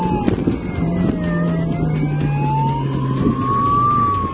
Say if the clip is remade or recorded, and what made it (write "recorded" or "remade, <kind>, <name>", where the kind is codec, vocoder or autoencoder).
recorded